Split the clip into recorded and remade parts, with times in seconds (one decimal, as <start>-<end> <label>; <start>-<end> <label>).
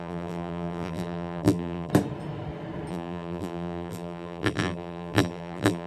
0.0-1.9 remade; 1.9-2.9 recorded; 2.9-5.9 remade